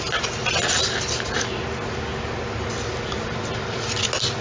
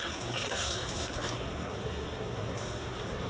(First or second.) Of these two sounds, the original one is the first